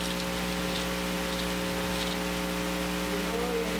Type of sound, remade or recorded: recorded